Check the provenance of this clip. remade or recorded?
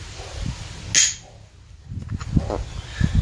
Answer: recorded